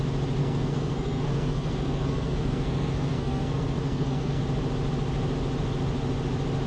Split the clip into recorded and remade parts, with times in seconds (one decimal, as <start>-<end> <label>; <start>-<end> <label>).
0.0-0.4 recorded; 0.4-4.4 remade; 4.4-6.7 recorded